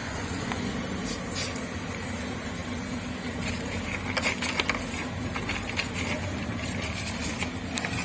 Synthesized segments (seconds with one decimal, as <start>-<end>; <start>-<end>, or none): 0.0-0.7